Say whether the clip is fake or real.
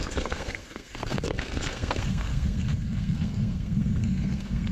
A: fake